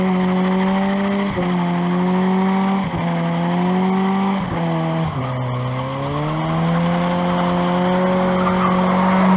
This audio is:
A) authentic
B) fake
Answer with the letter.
A